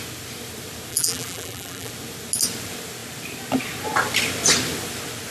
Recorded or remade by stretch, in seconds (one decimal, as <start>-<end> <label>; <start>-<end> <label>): 0.0-0.9 recorded; 0.9-1.9 remade; 1.9-5.3 recorded